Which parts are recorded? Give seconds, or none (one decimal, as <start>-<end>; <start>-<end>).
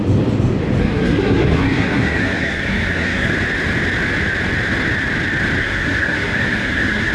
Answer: 0.0-0.8; 3.3-5.6